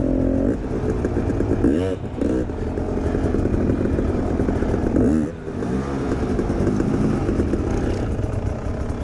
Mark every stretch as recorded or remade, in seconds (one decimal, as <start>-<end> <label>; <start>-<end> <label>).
0.0-9.0 recorded